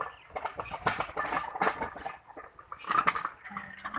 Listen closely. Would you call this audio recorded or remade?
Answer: recorded